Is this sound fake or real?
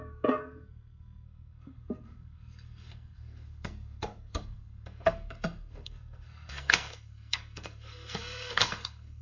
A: fake